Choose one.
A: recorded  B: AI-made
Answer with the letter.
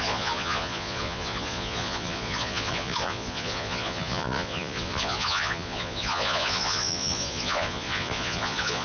B